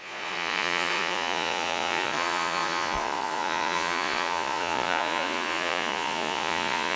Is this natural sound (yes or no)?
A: no